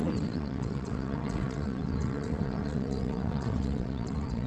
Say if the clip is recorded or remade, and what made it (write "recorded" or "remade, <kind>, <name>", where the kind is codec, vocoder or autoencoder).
remade, vocoder, WaveNeXt